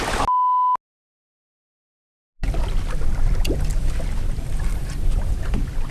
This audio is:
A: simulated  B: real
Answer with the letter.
B